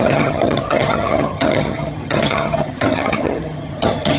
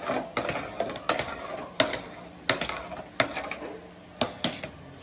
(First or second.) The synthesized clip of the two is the first